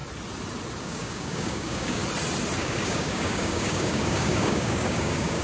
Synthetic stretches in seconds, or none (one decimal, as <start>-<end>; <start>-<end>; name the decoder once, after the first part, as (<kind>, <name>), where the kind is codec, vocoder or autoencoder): 0.8-2.0 (codec, DAC); 2.6-5.4